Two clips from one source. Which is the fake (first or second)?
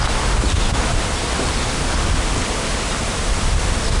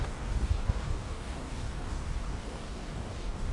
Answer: second